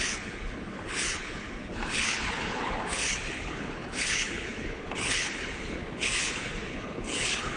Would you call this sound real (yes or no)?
no